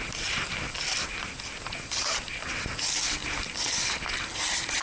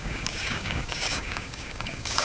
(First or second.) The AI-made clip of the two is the second